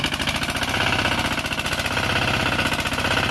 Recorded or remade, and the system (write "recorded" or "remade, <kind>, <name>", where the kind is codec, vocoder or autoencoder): recorded